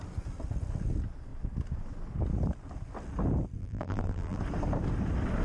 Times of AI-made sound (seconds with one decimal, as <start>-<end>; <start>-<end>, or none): 3.6-4.4